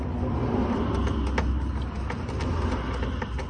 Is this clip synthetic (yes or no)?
no